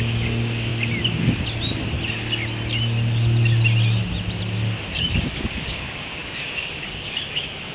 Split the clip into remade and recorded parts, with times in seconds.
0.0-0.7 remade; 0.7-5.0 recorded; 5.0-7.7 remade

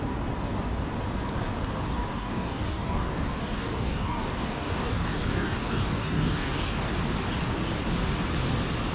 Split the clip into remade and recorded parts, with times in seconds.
0.0-2.1 recorded; 2.1-6.9 remade; 6.9-8.9 recorded

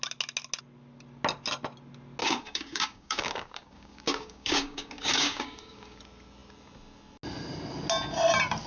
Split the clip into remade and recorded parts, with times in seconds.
0.0-2.2 recorded; 2.2-6.0 remade; 6.0-8.7 recorded

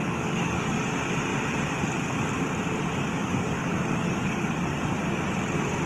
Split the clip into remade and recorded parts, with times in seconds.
0.0-0.8 remade; 0.8-3.2 recorded; 3.2-4.8 remade; 4.8-5.9 recorded

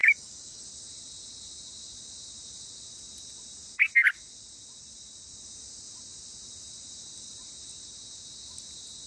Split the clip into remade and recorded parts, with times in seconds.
0.0-0.6 remade; 0.6-9.1 recorded